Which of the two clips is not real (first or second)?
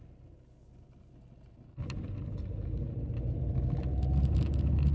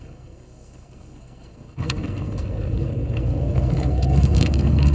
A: second